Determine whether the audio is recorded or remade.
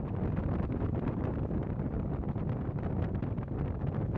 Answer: recorded